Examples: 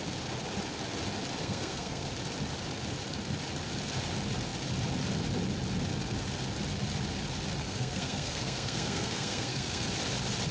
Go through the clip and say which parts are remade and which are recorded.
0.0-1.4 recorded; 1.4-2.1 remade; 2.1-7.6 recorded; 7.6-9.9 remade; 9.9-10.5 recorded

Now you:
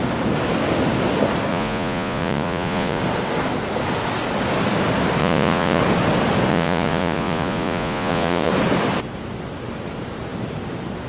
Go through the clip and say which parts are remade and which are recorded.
0.0-1.5 recorded; 1.5-3.0 remade; 3.0-5.2 recorded; 5.2-5.8 remade; 5.8-6.5 recorded; 6.5-8.5 remade; 8.5-11.1 recorded

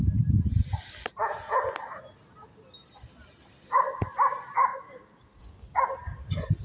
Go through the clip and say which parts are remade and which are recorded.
0.0-6.6 recorded

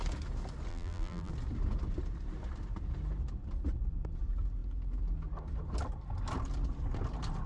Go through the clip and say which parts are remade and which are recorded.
0.0-0.7 recorded; 0.7-1.3 remade; 1.3-7.5 recorded

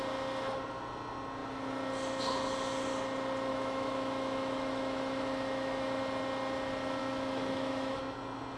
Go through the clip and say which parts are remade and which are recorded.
0.0-3.5 recorded; 3.5-6.0 remade; 6.0-7.0 recorded; 7.0-8.0 remade; 8.0-8.6 recorded